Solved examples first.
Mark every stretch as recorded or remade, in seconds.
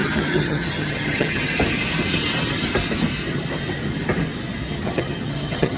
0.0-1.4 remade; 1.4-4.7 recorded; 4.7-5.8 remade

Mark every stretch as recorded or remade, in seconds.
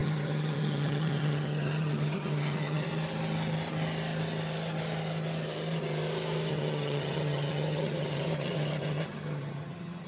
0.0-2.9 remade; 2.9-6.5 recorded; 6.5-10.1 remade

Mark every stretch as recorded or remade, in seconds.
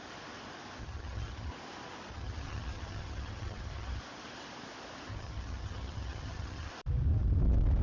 0.0-0.8 recorded; 0.8-1.5 remade; 1.5-2.1 recorded; 2.1-4.0 remade; 4.0-5.1 recorded; 5.1-6.7 remade; 6.7-7.8 recorded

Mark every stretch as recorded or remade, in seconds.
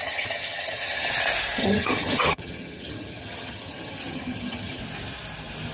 0.0-1.1 remade; 1.1-1.6 recorded; 1.6-4.8 remade; 4.8-5.7 recorded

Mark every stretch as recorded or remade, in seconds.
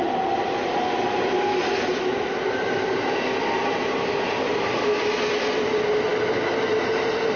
0.0-7.4 recorded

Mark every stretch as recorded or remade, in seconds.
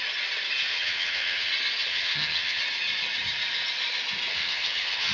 0.0-0.7 recorded; 0.7-1.5 remade; 1.5-1.9 recorded; 1.9-2.6 remade; 2.6-4.3 recorded; 4.3-5.1 remade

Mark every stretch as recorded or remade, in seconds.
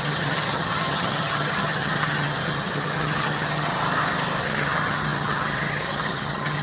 0.0-3.7 remade; 3.7-4.4 recorded; 4.4-6.6 remade